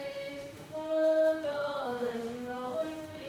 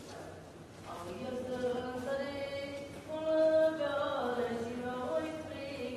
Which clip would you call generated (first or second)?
first